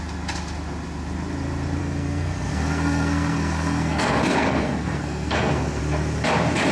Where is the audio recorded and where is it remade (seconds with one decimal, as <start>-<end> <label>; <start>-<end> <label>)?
0.0-1.8 recorded; 1.8-5.8 remade; 5.8-6.7 recorded